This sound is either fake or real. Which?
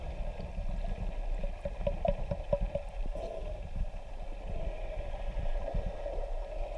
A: real